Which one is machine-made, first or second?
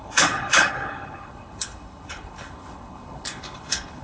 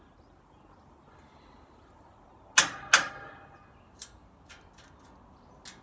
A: first